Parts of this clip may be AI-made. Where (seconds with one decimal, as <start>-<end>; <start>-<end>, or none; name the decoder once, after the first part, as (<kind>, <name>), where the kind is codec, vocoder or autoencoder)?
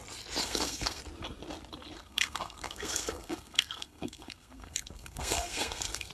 0.4-1.0 (codec, SNAC); 2.0-6.1